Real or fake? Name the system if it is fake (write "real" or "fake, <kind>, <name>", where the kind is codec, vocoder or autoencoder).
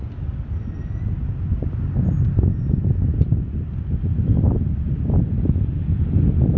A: real